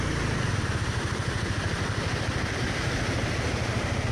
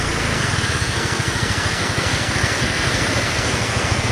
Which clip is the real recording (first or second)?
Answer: first